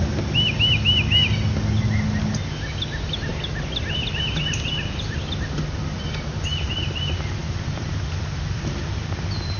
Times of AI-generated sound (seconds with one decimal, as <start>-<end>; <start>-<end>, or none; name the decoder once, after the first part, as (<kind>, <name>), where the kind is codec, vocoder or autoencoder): none